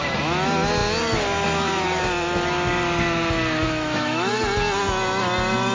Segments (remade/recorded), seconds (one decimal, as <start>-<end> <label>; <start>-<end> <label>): 0.0-3.6 recorded; 3.6-4.3 remade; 4.3-5.7 recorded